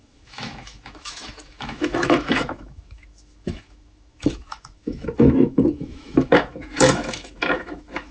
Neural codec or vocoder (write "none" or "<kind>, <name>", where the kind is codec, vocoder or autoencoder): autoencoder, DAC-VAE